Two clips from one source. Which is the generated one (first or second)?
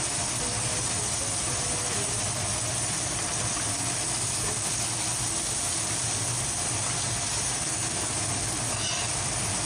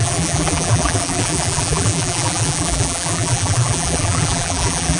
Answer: second